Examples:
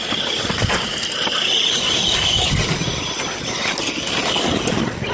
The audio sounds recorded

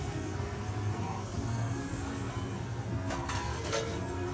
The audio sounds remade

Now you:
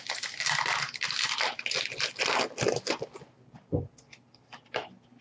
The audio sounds recorded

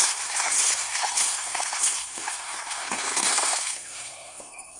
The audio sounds remade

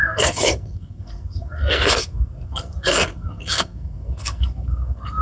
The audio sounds remade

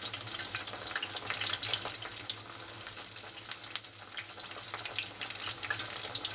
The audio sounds recorded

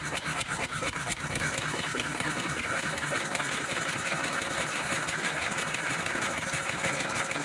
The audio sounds remade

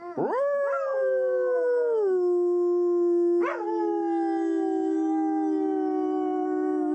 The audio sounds recorded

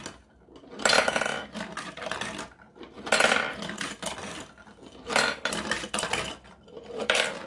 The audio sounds recorded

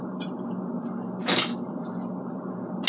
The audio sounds recorded